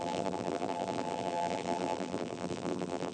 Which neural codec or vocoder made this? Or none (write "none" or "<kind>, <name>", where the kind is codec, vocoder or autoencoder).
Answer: vocoder, BigVGAN v2